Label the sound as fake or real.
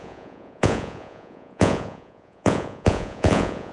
fake